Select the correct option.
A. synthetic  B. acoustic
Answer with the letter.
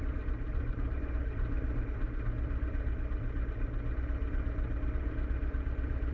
B